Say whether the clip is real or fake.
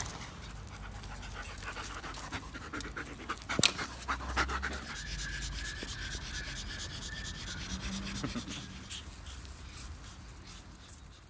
real